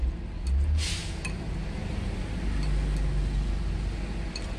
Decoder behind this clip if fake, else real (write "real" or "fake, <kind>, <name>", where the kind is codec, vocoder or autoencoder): real